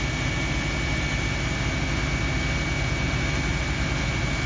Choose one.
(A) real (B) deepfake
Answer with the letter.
A